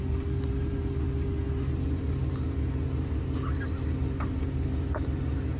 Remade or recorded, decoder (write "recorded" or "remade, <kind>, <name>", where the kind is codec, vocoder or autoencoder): recorded